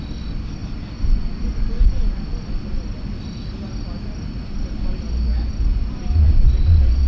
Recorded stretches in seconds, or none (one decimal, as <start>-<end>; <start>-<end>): 0.0-7.1